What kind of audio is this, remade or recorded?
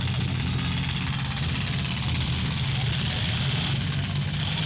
recorded